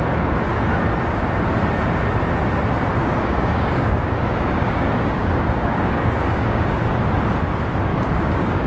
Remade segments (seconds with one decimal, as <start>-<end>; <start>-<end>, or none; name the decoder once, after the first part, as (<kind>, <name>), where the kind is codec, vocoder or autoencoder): 3.0-6.8 (codec, DAC); 7.9-8.7